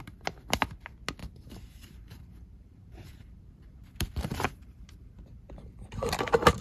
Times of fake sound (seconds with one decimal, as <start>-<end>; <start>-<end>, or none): 1.2-5.2